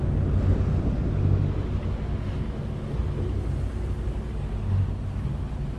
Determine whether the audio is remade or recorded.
recorded